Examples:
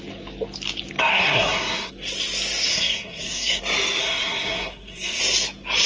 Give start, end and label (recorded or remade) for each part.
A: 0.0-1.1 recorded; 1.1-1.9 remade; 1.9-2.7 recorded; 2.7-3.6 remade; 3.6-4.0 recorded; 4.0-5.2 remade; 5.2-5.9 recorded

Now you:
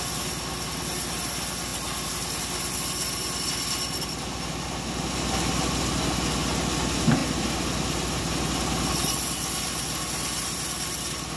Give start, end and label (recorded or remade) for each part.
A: 0.0-11.4 recorded

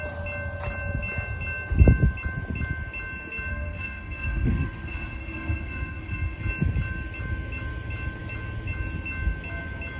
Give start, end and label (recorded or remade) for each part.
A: 0.0-3.5 recorded; 3.5-6.4 remade; 6.4-10.0 recorded

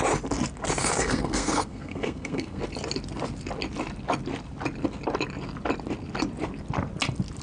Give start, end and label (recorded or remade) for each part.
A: 0.0-0.8 recorded; 0.8-2.6 remade; 2.6-7.4 recorded

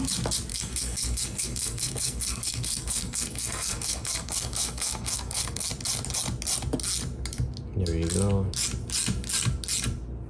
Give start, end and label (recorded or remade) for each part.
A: 0.0-0.5 recorded; 0.5-5.7 remade; 5.7-10.3 recorded

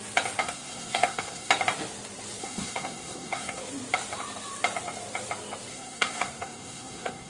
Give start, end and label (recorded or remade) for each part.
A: 0.0-0.4 recorded; 0.4-1.5 remade; 1.5-2.4 recorded; 2.4-3.6 remade; 3.6-5.7 recorded; 5.7-7.3 remade

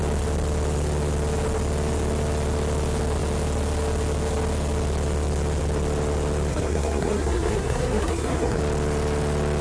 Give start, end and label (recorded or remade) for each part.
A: 0.0-6.5 recorded; 6.5-8.6 remade; 8.6-9.6 recorded

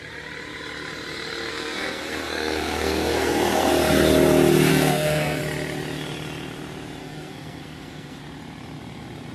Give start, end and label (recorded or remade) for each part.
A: 0.0-1.5 recorded; 1.5-3.7 remade; 3.7-4.7 recorded; 4.7-5.4 remade; 5.4-7.0 recorded; 7.0-8.2 remade; 8.2-9.3 recorded